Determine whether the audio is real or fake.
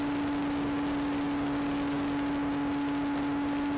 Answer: real